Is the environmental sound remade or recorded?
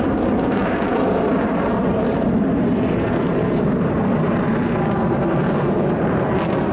remade